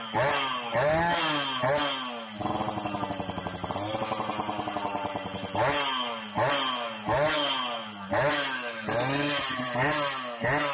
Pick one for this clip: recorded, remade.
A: recorded